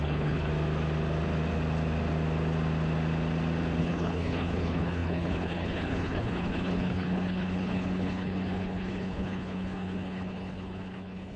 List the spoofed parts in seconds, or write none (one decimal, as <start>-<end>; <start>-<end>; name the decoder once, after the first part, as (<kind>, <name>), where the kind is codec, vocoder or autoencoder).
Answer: 0.0-0.5 (codec, HILCodec); 3.8-11.4